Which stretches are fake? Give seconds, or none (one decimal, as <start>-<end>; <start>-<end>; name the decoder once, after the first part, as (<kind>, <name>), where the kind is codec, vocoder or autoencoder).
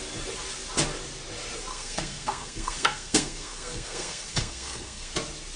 1.7-5.1 (codec, SNAC)